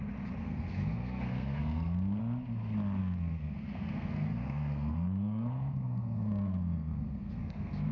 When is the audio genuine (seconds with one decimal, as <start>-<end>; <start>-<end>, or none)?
0.0-0.4; 2.2-3.0